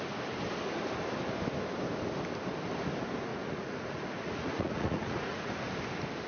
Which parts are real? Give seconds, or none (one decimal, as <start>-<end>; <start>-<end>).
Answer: 0.0-3.3; 5.5-6.3